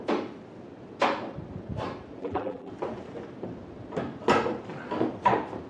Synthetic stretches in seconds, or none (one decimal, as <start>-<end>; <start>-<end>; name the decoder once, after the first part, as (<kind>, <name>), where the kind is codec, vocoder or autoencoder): 2.2-2.7 (vocoder, BigVGAN v2)